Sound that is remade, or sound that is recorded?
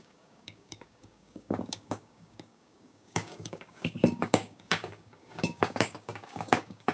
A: remade